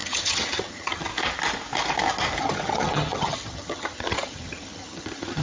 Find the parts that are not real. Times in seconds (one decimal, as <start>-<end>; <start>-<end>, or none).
0.0-1.1; 2.4-5.4